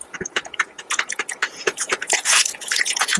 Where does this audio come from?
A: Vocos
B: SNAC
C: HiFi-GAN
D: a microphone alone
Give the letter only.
A